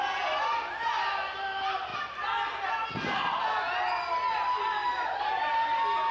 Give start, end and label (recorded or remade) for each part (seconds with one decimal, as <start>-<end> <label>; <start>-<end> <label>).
0.0-1.9 recorded; 1.9-2.7 remade; 2.7-6.1 recorded